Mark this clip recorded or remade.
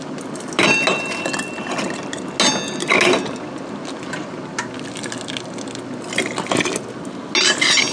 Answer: recorded